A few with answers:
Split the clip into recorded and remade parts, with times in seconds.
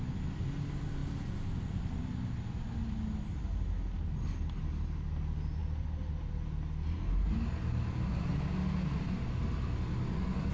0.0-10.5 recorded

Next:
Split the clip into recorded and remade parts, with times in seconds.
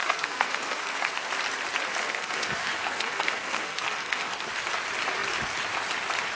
0.0-1.3 remade; 1.3-2.0 recorded; 2.0-4.5 remade; 4.5-6.3 recorded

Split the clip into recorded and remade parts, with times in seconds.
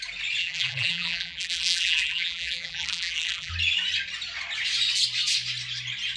0.0-0.4 recorded; 0.4-3.5 remade; 3.5-6.2 recorded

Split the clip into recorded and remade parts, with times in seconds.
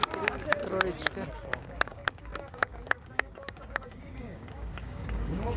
0.0-0.6 remade; 0.6-1.3 recorded; 1.3-5.6 remade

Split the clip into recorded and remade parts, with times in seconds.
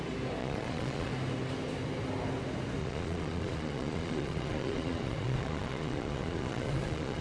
0.0-0.4 recorded; 0.4-1.1 remade; 1.1-2.8 recorded; 2.8-7.2 remade